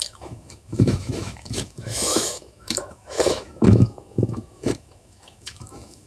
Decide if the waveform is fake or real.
fake